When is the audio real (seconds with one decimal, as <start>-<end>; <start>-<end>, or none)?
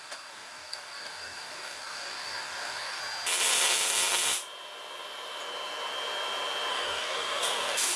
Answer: 3.0-6.7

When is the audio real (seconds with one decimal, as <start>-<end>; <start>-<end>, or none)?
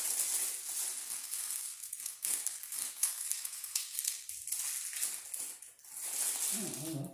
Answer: 0.0-1.0; 4.3-7.1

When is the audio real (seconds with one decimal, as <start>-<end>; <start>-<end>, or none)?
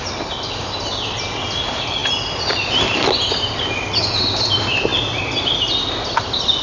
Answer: 0.0-6.6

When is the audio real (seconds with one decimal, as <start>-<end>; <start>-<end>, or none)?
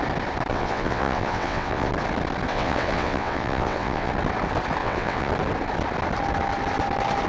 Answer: 0.0-0.5; 1.9-2.5; 4.1-4.8; 5.3-7.3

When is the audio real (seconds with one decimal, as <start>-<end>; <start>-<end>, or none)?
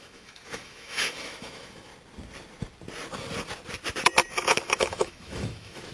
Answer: 1.9-4.3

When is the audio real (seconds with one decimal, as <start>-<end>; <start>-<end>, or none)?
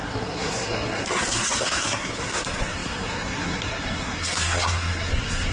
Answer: none